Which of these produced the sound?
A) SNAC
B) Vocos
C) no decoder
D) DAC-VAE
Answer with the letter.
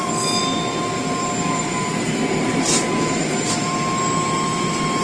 C